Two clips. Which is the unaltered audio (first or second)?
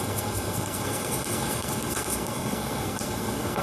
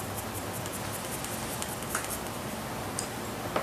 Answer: second